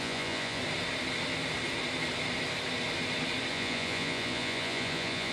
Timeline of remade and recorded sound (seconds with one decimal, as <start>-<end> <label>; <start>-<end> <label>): 0.0-0.6 remade; 0.6-3.5 recorded; 3.5-5.3 remade